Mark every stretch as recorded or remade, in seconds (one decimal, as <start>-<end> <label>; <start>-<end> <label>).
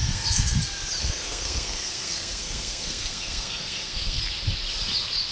0.0-0.6 remade; 0.6-1.0 recorded; 1.0-4.2 remade; 4.2-5.3 recorded